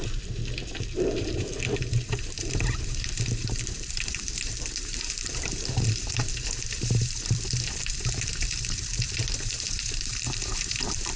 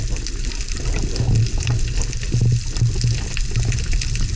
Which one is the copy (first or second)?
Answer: first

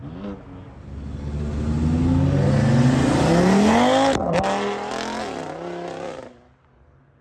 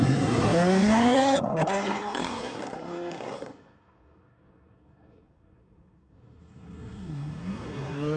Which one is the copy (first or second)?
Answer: second